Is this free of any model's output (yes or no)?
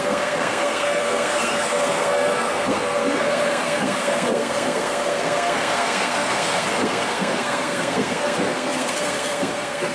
no